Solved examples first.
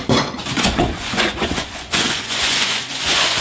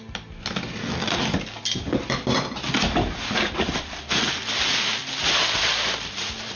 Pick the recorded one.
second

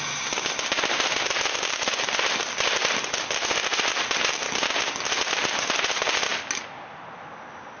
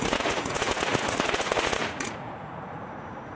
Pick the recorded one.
first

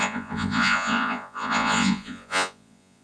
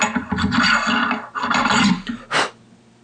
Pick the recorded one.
second